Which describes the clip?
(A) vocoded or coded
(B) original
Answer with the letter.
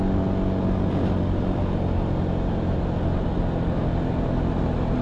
B